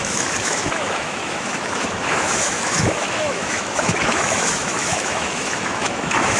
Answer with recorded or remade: remade